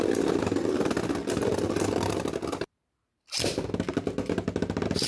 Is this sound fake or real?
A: real